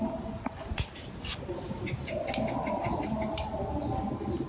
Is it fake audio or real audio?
real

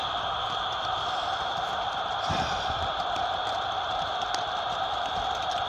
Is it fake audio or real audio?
fake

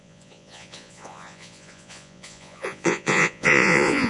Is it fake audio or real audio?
fake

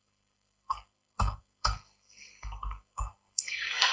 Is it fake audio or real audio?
fake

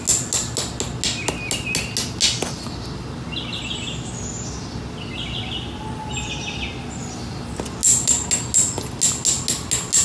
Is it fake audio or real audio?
real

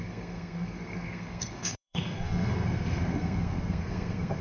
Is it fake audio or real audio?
fake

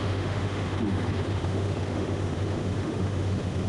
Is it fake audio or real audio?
fake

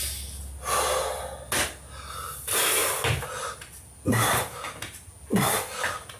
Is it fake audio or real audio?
real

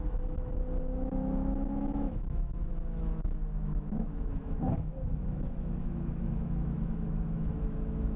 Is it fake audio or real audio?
fake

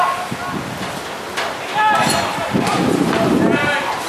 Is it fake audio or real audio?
real